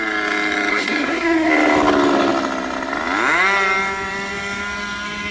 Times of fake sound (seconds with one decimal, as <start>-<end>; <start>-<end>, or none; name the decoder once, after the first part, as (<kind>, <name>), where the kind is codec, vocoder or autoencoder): 0.7-1.5 (codec, SNAC)